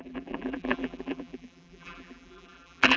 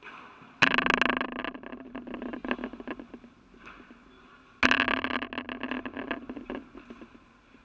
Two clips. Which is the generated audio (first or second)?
first